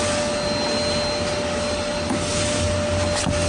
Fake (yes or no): no